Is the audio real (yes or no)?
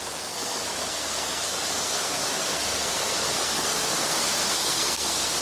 no